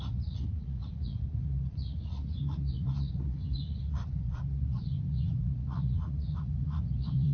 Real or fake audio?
fake